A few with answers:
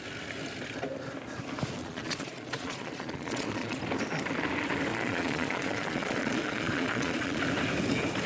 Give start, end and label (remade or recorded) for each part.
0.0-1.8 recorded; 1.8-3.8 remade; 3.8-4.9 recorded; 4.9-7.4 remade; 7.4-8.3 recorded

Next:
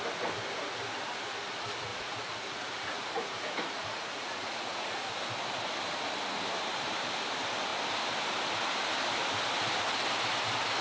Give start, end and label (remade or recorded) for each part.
0.0-1.9 recorded; 1.9-5.1 remade; 5.1-10.8 recorded

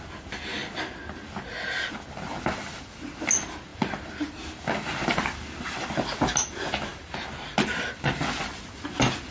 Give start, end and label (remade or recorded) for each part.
0.0-9.3 recorded

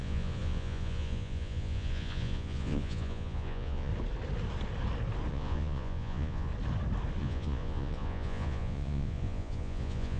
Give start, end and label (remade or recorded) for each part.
0.0-3.9 remade; 3.9-5.3 recorded; 5.3-6.5 remade; 6.5-7.2 recorded; 7.2-10.2 remade

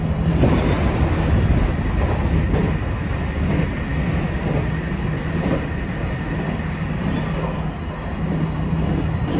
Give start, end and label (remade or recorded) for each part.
0.0-9.4 recorded